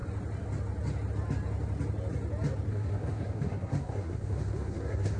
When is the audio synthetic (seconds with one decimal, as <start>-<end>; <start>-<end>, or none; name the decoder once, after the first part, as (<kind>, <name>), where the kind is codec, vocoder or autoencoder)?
2.7-5.2 (codec, SNAC)